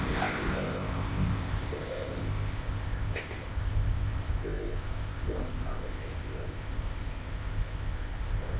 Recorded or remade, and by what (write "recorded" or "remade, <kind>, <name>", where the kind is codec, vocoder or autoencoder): remade, codec, ZipCodec